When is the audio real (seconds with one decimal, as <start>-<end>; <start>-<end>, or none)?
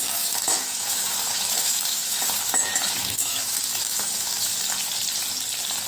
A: 4.5-5.9